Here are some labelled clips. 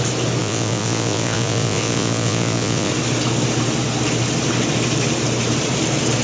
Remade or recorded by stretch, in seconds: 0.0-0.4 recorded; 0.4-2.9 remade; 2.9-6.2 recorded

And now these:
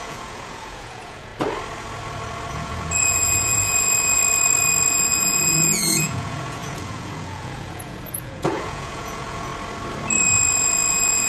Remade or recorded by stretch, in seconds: 0.0-1.3 remade; 1.3-2.5 recorded; 2.5-4.2 remade; 4.2-4.9 recorded; 4.9-9.5 remade; 9.5-10.9 recorded; 10.9-11.3 remade

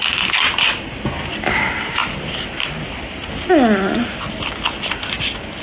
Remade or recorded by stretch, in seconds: 0.0-5.6 recorded

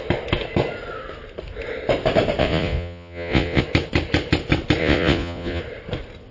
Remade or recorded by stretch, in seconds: 0.0-2.4 recorded; 2.4-3.6 remade; 3.6-4.8 recorded; 4.8-5.6 remade; 5.6-6.3 recorded

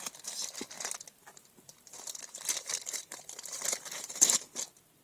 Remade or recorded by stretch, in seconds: 0.0-1.2 recorded; 1.2-4.2 remade; 4.2-5.0 recorded

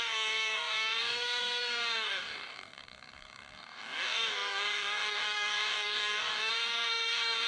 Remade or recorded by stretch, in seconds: 0.0-7.5 remade

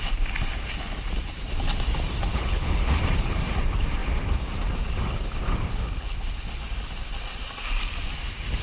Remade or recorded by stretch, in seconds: 0.0-2.3 recorded; 2.3-3.0 remade; 3.0-8.6 recorded

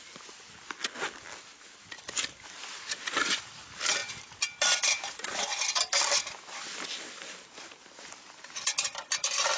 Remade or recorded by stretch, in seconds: 0.0-9.6 recorded